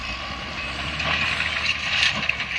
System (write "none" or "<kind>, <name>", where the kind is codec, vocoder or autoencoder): vocoder, BigVGAN v2